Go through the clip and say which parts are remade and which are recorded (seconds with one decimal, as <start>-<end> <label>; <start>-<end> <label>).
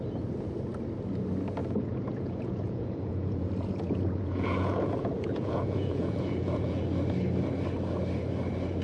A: 0.0-1.6 recorded; 1.6-6.8 remade; 6.8-8.8 recorded